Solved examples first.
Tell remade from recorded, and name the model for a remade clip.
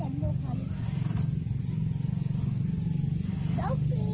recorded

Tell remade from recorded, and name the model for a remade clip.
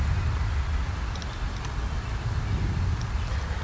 recorded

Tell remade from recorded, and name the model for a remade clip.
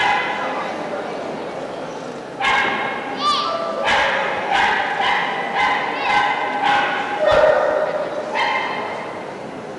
recorded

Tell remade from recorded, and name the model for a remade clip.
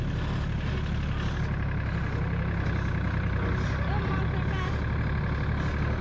recorded